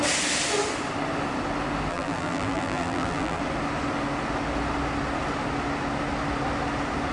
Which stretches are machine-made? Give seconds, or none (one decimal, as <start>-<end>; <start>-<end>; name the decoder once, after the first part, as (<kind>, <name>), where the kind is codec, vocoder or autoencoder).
1.9-3.4 (vocoder, BigVGAN v2)